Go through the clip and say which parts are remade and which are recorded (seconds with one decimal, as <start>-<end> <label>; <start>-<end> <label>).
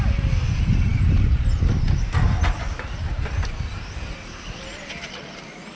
0.0-0.9 recorded; 0.9-3.2 remade; 3.2-5.8 recorded